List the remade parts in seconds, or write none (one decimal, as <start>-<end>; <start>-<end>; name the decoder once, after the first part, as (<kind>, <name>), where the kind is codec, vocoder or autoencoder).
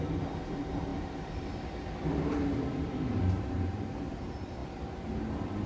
0.9-3.3 (vocoder, BigVGAN v2); 4.6-5.2